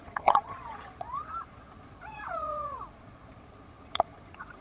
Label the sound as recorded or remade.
remade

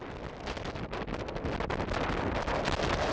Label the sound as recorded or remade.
recorded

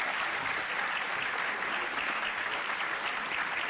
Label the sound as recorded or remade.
remade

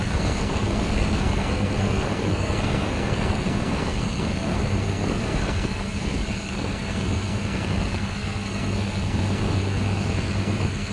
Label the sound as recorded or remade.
remade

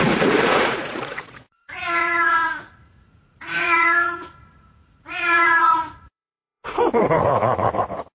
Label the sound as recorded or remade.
remade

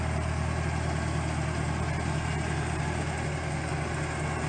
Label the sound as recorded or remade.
recorded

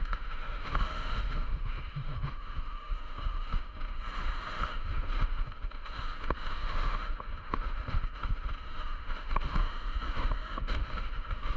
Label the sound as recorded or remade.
remade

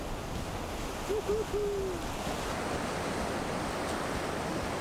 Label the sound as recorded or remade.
recorded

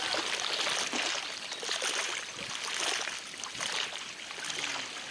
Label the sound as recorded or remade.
recorded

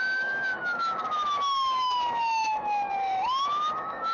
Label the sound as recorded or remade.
remade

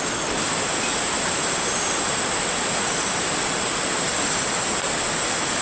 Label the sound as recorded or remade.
recorded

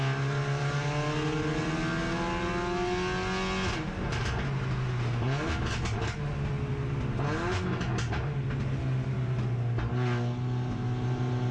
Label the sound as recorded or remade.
recorded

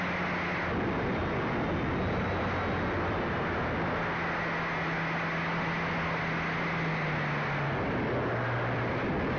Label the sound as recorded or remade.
recorded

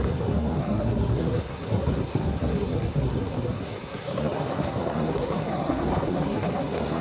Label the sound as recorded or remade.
remade